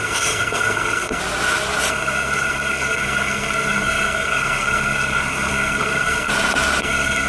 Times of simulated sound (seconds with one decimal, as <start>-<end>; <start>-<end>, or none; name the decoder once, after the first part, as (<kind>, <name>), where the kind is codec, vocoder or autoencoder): 0.0-1.2 (codec, SNAC); 1.9-6.3; 6.8-7.3